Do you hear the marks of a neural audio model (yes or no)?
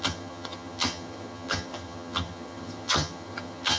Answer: yes